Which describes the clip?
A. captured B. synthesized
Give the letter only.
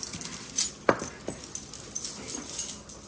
A